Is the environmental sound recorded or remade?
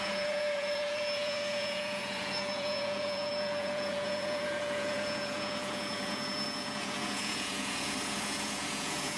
remade